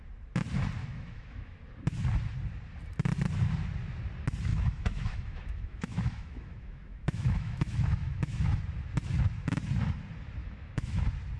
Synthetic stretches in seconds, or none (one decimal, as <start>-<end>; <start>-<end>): 0.8-1.6; 4.5-8.6; 10.4-11.0